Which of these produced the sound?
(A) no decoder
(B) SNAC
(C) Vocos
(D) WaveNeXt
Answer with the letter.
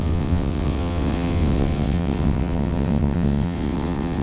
D